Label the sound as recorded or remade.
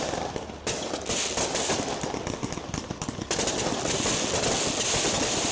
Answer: recorded